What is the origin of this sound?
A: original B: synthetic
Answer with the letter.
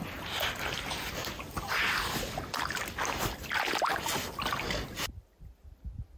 A